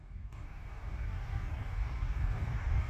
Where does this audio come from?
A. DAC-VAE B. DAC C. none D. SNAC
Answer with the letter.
B